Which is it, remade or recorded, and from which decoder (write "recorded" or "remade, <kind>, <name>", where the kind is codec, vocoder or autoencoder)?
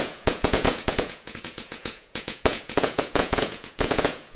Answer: remade, vocoder, Vocos